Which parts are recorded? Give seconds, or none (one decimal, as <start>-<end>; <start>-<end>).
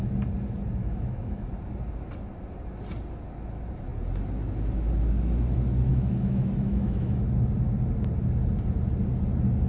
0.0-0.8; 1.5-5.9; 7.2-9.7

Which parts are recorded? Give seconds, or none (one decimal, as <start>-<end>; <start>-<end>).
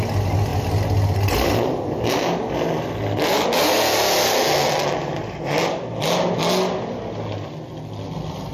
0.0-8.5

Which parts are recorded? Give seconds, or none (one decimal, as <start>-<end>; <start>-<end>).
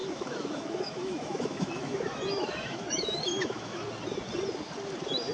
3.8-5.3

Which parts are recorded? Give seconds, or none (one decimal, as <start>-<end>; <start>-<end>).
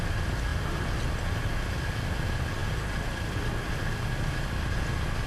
0.0-5.3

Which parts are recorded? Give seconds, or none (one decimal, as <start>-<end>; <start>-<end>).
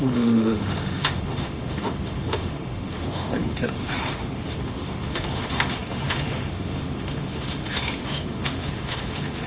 none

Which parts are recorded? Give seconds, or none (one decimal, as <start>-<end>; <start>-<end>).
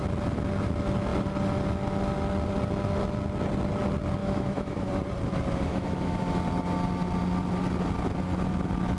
0.0-4.2; 4.9-5.7; 6.2-9.0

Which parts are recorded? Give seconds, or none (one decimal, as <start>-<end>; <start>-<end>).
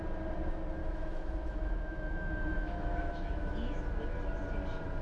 0.0-0.8; 3.8-5.0